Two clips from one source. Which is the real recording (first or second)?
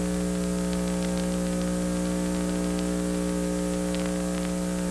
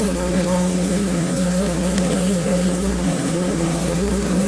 first